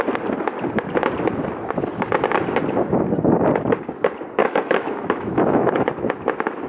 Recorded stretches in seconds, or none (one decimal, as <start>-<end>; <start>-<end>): 0.0-4.4; 5.9-6.7